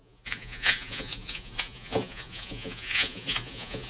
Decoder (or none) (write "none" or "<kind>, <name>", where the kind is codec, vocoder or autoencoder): vocoder, Vocos